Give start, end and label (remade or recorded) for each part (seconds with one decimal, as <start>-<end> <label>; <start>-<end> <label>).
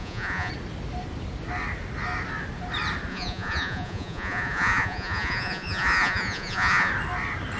0.0-0.5 remade; 0.5-3.1 recorded; 3.1-6.9 remade; 6.9-7.6 recorded